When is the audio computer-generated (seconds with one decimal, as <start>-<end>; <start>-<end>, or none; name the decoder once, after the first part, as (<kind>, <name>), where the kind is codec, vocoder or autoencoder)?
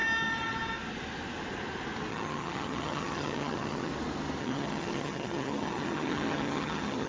2.1-3.9 (vocoder, HiFi-GAN); 4.4-7.1